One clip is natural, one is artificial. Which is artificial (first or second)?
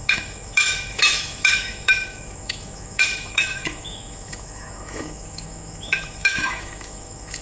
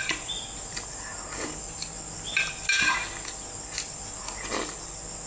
first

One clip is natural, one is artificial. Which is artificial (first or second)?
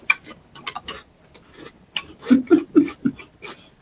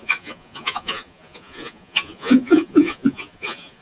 second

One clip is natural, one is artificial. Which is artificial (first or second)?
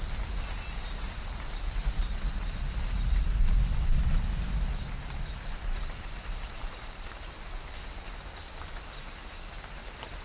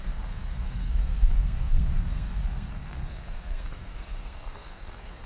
second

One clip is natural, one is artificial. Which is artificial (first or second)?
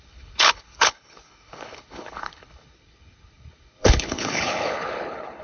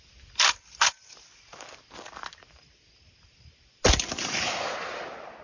first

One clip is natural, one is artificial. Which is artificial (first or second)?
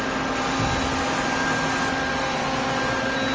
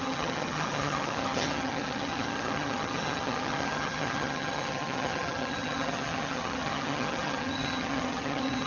second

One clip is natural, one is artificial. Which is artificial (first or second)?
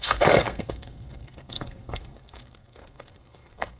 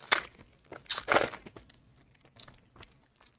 first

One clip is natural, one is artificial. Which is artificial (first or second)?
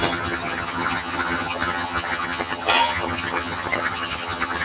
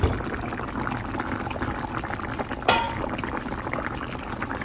first